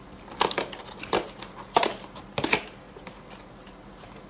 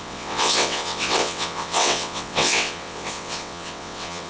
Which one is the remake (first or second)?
second